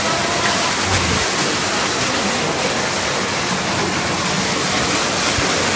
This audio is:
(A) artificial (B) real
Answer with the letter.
B